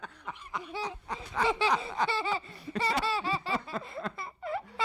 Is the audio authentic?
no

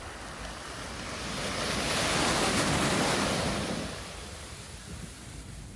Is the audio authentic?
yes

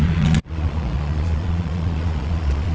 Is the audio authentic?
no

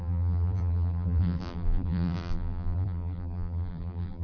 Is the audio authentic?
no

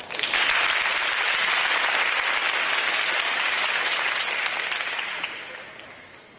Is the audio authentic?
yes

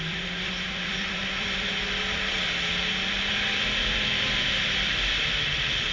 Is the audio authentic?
no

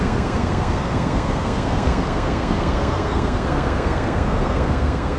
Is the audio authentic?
no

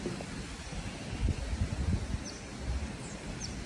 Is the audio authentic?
yes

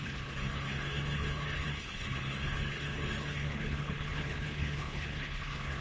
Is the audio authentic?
no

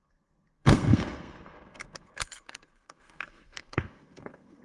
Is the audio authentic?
no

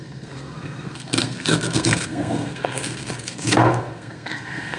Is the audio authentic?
no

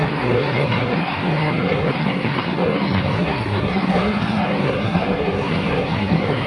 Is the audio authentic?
no